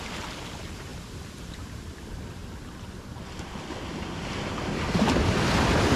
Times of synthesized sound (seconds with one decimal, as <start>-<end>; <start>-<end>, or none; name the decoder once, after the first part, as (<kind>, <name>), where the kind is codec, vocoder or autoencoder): none